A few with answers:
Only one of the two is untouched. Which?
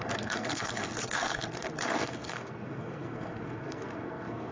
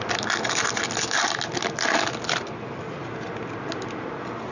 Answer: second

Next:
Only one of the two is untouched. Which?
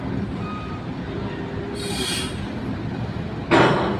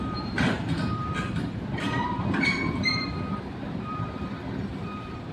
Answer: first